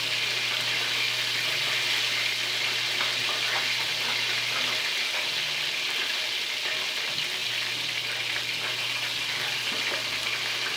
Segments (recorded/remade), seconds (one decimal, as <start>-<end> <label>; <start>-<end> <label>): 0.0-10.8 recorded